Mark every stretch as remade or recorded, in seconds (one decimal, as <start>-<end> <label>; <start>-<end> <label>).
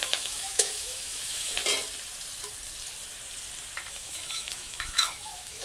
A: 0.0-1.6 remade; 1.6-3.9 recorded; 3.9-5.6 remade